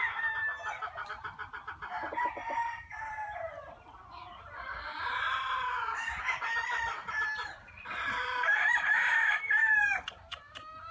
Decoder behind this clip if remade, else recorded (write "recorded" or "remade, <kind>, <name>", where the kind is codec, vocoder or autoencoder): remade, vocoder, BigVGAN v2